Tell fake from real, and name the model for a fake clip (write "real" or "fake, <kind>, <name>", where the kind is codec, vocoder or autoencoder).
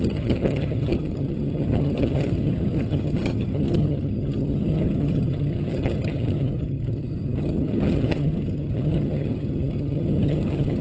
fake, vocoder, HiFi-GAN